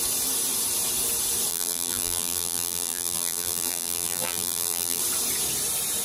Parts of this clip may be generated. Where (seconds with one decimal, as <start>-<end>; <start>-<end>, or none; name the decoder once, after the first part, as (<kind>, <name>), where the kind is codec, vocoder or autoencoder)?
1.5-5.0 (vocoder, BigVGAN v2)